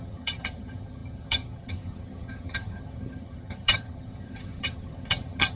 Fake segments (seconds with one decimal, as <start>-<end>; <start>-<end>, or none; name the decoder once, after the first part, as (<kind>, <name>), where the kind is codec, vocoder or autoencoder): 0.0-5.6 (vocoder, HiFi-GAN)